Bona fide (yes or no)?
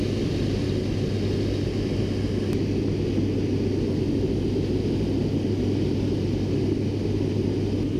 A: yes